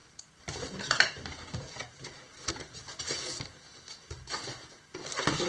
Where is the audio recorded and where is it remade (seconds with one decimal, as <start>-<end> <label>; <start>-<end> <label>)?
0.0-5.5 recorded